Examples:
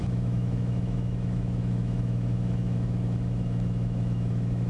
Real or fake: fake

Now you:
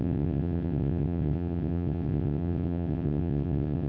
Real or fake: fake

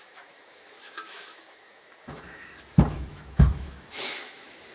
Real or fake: fake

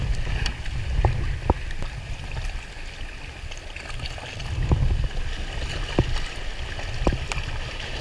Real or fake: real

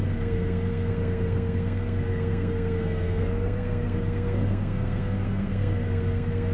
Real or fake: fake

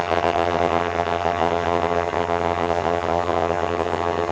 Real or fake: fake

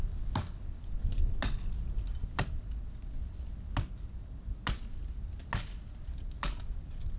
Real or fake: real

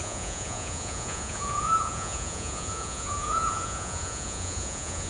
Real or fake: fake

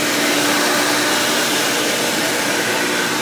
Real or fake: real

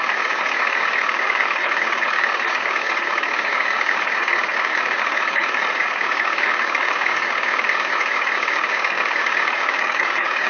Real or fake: fake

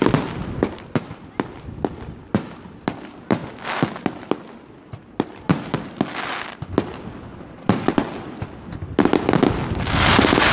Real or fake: real